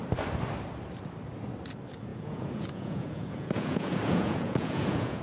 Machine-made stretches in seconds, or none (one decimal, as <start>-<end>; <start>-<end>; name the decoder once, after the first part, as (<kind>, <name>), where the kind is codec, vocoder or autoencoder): 2.1-5.2 (vocoder, Vocos)